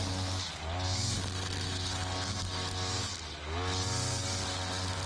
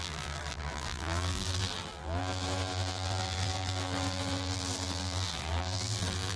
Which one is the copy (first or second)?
second